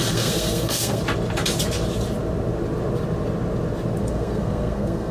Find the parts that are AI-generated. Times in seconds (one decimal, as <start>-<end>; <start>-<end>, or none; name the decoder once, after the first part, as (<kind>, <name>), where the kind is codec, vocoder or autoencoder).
0.0-1.0 (codec, SNAC); 4.0-5.1